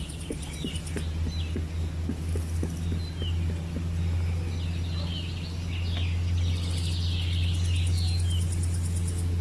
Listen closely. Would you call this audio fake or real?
real